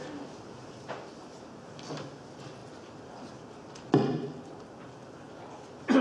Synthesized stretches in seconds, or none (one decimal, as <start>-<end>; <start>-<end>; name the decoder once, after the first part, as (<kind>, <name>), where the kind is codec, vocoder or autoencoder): 2.6-3.3 (vocoder, BigVGAN v2)